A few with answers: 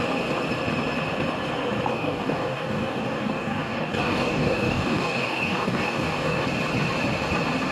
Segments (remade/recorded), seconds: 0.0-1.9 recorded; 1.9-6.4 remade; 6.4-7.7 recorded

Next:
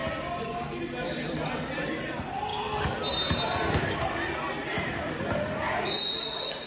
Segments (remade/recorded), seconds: 0.0-6.7 recorded

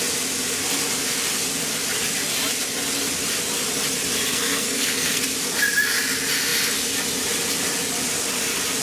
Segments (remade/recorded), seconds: 0.0-4.3 recorded; 4.3-5.2 remade; 5.2-8.8 recorded

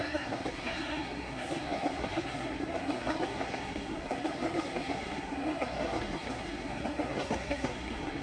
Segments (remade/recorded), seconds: 0.0-8.2 remade

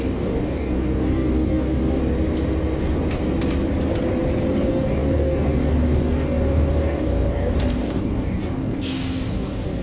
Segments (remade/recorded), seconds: 0.0-2.0 remade; 2.0-4.5 recorded; 4.5-9.8 remade

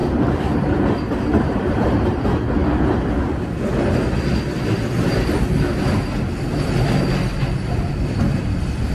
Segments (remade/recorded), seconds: 0.0-2.2 remade; 2.2-8.9 recorded

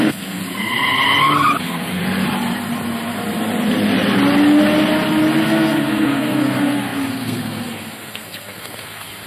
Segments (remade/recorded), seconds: 0.0-0.4 remade; 0.4-1.6 recorded; 1.6-2.0 remade; 2.0-5.4 recorded; 5.4-9.3 remade